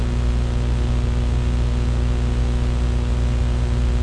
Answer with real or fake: real